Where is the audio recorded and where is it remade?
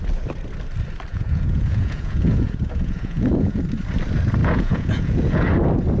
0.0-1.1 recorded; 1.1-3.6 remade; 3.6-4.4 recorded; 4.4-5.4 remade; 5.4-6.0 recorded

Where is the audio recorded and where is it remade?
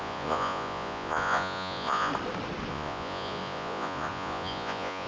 0.0-2.1 remade; 2.1-2.7 recorded; 2.7-5.1 remade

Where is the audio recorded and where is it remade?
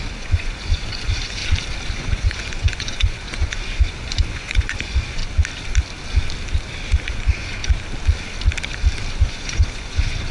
0.0-1.4 remade; 1.4-1.9 recorded; 1.9-5.2 remade; 5.2-7.0 recorded; 7.0-7.6 remade; 7.6-9.1 recorded; 9.1-10.3 remade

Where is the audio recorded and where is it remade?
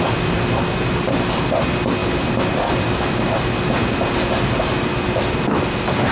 0.0-6.1 recorded